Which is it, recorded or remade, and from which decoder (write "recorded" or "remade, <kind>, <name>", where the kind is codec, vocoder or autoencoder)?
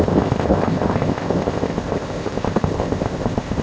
remade, codec, ZipCodec